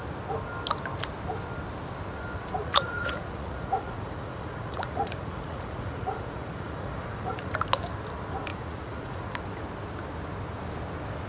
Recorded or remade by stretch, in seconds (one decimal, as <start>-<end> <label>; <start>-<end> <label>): 0.0-2.6 recorded; 2.6-7.5 remade; 7.5-8.5 recorded; 8.5-9.2 remade; 9.2-11.3 recorded